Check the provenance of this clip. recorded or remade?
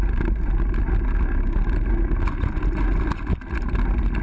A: recorded